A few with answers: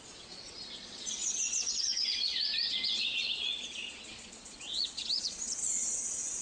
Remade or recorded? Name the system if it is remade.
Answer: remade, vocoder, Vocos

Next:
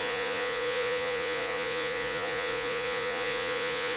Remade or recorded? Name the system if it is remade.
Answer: remade, vocoder, Vocos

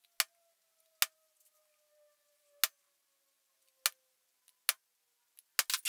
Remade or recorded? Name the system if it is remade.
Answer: recorded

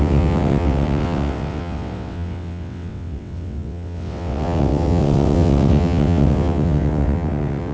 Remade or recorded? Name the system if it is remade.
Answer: remade, vocoder, WaveNeXt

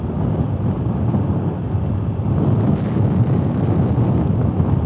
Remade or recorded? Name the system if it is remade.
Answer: recorded